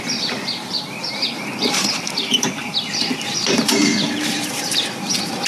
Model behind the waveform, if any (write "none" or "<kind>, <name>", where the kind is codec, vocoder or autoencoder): vocoder, BigVGAN v2